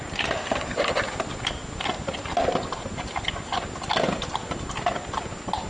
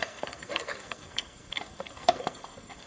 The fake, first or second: second